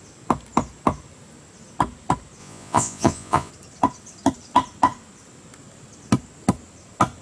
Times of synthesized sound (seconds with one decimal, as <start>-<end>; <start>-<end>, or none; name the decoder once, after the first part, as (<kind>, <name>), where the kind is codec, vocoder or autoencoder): 2.4-3.5 (vocoder, Vocos)